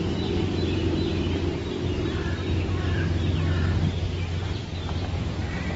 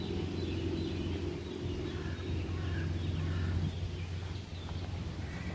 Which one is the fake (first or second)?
first